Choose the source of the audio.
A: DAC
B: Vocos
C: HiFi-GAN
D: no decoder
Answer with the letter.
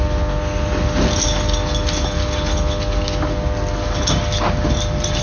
D